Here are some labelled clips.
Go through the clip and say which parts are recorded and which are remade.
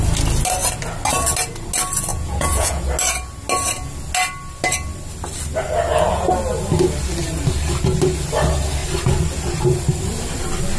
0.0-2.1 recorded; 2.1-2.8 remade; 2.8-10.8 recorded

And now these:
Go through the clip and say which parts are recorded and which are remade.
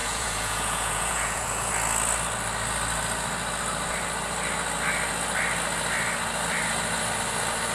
0.0-1.7 remade; 1.7-7.7 recorded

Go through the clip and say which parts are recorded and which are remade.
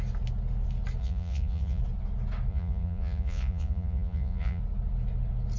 0.0-1.0 recorded; 1.0-1.8 remade; 1.8-2.5 recorded; 2.5-4.6 remade; 4.6-5.6 recorded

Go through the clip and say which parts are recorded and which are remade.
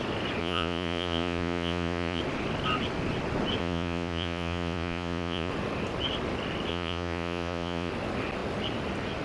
0.0-0.4 recorded; 0.4-2.2 remade; 2.2-3.6 recorded; 3.6-5.5 remade; 5.5-6.7 recorded; 6.7-7.9 remade; 7.9-9.2 recorded